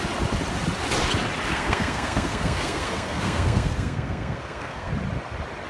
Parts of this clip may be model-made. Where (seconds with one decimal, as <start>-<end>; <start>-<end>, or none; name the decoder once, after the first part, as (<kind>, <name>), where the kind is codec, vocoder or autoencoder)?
1.5-4.9 (codec, SNAC)